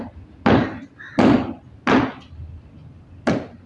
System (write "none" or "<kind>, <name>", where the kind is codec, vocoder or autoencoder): none